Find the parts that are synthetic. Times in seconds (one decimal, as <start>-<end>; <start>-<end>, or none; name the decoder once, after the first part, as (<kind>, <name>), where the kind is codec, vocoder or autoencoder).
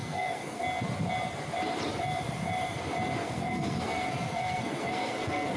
0.0-0.6 (codec, SNAC); 3.2-5.6